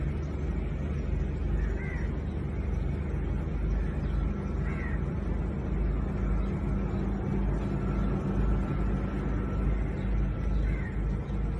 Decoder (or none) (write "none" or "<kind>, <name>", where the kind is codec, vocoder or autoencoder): none